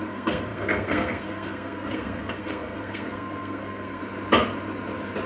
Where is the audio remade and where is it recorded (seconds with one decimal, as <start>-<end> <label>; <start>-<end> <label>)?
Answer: 0.0-4.0 remade; 4.0-5.3 recorded